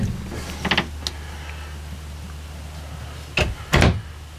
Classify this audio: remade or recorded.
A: recorded